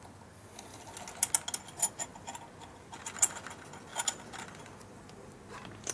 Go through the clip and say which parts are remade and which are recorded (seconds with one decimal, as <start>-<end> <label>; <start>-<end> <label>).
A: 0.0-5.9 recorded